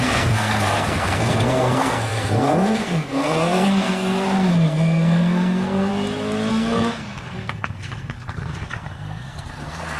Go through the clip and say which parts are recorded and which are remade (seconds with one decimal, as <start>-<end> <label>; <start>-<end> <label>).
0.0-5.9 remade; 5.9-6.5 recorded; 6.5-10.0 remade